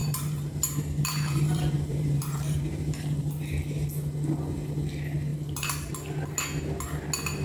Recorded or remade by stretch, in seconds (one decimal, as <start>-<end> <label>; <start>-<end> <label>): 0.0-3.4 remade; 3.4-5.3 recorded; 5.3-5.9 remade; 5.9-7.4 recorded